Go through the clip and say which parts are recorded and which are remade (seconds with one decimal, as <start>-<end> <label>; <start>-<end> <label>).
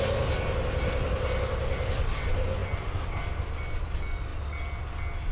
0.0-5.3 recorded